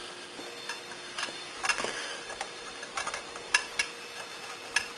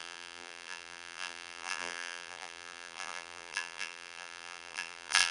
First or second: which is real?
first